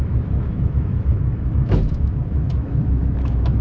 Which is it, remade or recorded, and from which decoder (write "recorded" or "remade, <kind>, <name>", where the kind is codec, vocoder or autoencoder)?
remade, autoencoder, DAC-VAE